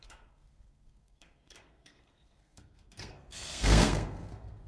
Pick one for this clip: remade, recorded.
remade